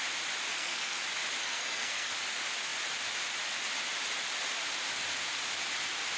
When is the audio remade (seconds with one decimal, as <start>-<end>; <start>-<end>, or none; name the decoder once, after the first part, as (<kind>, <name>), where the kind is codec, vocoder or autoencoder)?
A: 0.5-1.0 (codec, SNAC); 1.4-2.1